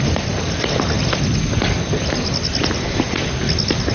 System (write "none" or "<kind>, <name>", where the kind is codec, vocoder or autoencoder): none